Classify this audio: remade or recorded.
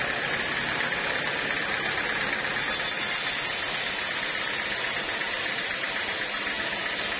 recorded